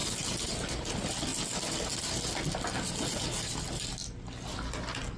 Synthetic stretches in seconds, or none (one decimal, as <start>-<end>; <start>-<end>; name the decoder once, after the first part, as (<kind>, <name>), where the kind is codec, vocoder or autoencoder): none

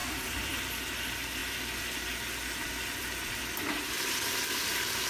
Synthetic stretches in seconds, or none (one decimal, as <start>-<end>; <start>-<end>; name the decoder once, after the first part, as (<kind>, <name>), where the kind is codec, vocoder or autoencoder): 0.0-0.6 (vocoder, BigVGAN v2)

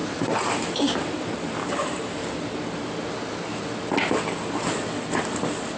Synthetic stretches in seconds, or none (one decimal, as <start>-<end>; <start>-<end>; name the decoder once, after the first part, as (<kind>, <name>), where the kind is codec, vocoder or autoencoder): 0.0-2.2 (vocoder, BigVGAN v2)